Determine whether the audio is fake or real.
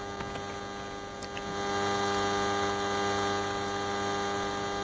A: real